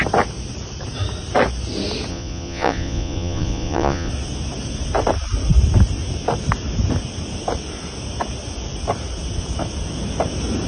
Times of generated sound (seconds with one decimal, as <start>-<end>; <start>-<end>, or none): 2.1-4.1